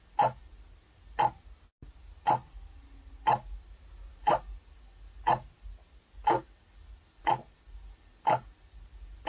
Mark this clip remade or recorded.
recorded